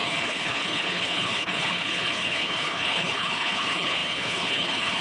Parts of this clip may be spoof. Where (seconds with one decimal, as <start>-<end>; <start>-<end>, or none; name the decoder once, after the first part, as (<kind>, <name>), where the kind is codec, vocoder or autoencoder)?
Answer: 0.0-5.0 (codec, HILCodec)